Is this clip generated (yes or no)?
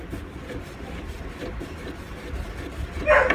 no